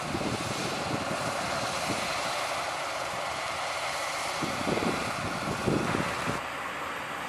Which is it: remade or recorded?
recorded